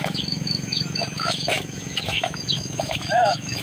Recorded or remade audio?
remade